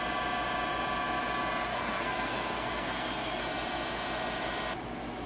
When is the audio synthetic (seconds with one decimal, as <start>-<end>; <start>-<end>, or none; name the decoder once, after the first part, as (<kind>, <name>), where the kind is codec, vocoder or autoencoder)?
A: 1.7-3.4 (codec, SNAC)